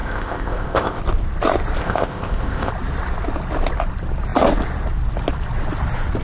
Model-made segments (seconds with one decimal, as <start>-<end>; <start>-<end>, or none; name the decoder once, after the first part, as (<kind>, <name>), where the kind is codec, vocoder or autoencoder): 0.0-1.0 (codec, ZipCodec); 1.8-2.7